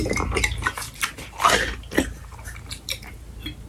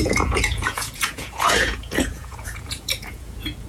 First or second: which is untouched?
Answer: first